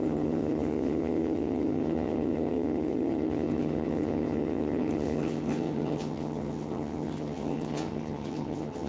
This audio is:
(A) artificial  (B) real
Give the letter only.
A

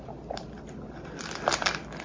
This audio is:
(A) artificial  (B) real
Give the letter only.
B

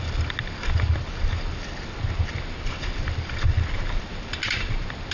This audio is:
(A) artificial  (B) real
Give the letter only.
B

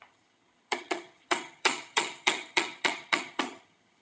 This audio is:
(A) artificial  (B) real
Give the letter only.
A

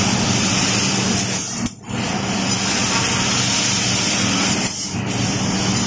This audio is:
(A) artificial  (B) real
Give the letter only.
B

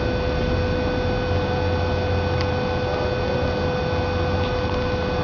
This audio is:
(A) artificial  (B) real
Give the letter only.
B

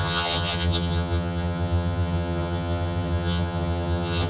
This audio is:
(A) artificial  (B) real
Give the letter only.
A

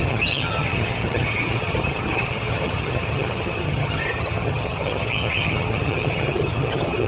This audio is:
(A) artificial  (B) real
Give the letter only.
A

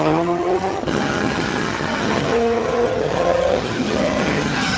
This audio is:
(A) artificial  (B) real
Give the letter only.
A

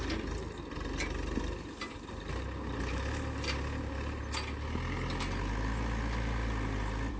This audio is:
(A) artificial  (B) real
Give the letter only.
B